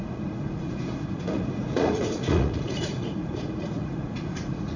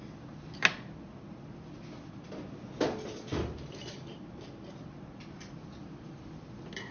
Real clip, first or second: second